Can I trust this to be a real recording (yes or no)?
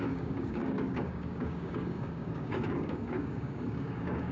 no